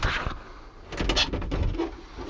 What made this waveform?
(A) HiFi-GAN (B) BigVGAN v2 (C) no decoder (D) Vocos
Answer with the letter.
C